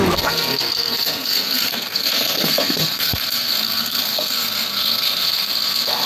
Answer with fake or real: fake